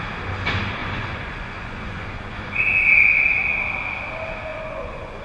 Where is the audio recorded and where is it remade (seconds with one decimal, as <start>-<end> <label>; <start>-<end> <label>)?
0.0-0.8 recorded; 0.8-2.6 remade; 2.6-4.5 recorded; 4.5-5.2 remade